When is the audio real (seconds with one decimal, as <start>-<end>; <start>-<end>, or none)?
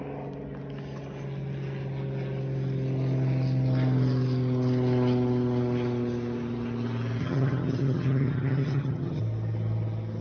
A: 0.0-7.2; 9.2-10.2